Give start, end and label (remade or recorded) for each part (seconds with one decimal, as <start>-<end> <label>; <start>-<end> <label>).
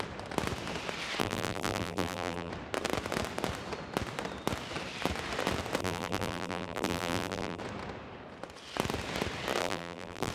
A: 0.0-1.2 recorded; 1.2-2.5 remade; 2.5-5.8 recorded; 5.8-7.6 remade; 7.6-9.6 recorded; 9.6-10.3 remade